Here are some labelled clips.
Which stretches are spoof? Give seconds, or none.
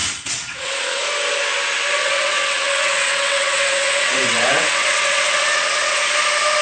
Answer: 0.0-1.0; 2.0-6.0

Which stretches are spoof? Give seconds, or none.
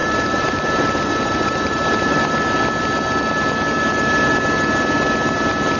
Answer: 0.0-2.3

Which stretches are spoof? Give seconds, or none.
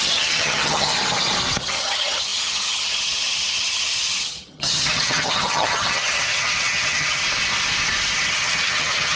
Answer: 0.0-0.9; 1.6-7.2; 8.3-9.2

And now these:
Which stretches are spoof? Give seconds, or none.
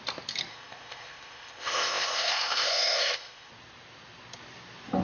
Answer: 0.5-3.5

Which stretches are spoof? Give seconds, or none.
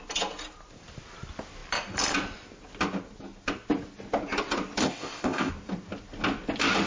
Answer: 4.8-5.5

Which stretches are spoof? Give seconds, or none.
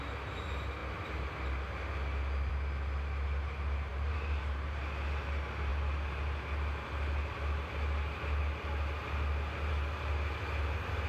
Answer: 3.9-4.8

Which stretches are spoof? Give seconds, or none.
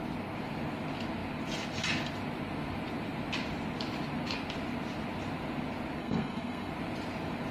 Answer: 6.0-6.7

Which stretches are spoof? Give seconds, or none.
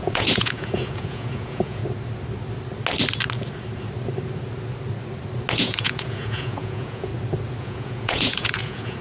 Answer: 0.0-1.8; 5.5-7.1; 7.6-9.0